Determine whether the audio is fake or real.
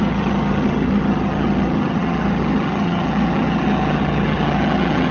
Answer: fake